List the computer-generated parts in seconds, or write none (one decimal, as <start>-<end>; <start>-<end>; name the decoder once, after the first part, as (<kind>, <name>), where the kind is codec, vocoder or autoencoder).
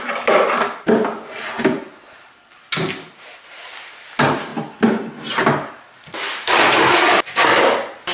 0.0-4.5 (vocoder, BigVGAN v2); 5.7-8.1